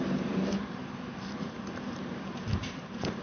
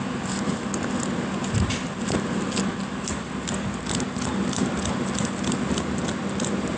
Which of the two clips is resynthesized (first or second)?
first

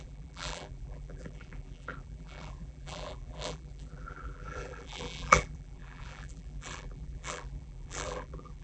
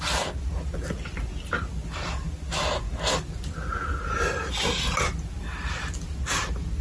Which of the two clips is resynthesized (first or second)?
first